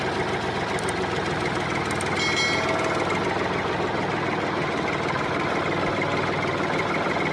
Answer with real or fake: real